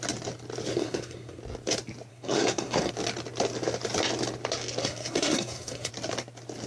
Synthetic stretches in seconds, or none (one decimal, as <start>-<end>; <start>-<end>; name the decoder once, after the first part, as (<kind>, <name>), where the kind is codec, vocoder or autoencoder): 0.7-1.4 (codec, SNAC); 2.1-2.9; 4.8-5.9